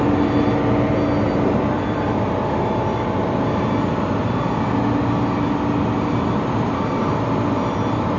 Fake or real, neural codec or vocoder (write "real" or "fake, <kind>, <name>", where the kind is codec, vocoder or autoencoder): real